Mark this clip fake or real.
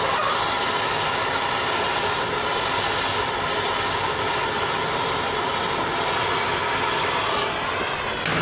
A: real